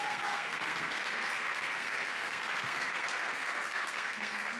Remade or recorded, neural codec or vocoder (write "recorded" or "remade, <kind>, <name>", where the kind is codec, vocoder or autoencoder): remade, codec, SNAC